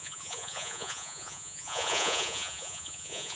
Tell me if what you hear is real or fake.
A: fake